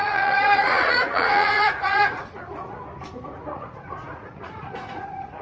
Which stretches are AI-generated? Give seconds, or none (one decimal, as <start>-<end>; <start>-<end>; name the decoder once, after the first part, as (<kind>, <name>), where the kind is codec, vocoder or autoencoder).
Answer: 0.0-2.8 (vocoder, Vocos); 3.5-5.4